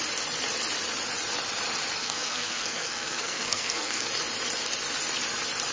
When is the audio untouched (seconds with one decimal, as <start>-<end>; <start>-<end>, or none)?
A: 0.0-2.0; 4.1-5.7